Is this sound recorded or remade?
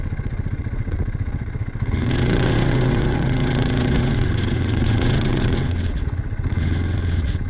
remade